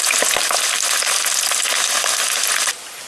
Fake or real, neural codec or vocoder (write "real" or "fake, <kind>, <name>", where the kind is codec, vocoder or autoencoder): real